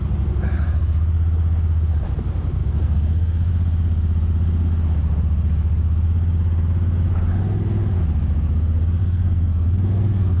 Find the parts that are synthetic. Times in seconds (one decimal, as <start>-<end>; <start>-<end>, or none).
2.6-3.5; 9.0-10.4